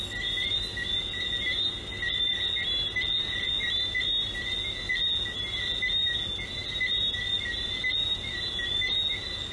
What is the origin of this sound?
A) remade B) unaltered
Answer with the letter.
B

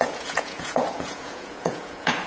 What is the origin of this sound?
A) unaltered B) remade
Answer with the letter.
B